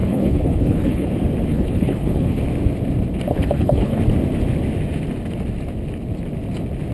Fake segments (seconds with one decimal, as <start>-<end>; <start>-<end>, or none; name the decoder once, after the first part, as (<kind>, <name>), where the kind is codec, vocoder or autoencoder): 0.0-1.1 (codec, HILCodec); 1.5-2.4; 3.3-4.0